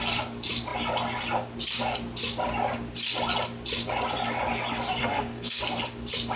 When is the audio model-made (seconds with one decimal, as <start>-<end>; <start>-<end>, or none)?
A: 5.0-5.6